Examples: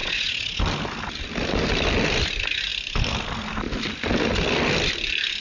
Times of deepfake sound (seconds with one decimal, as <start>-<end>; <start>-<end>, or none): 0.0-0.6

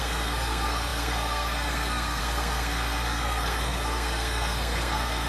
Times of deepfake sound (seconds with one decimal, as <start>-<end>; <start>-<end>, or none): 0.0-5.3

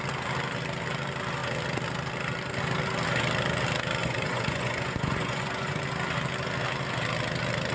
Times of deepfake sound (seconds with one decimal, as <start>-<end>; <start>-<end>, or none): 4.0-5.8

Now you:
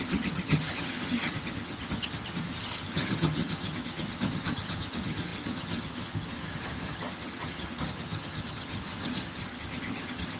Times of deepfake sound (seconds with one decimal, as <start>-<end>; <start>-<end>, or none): 0.0-10.4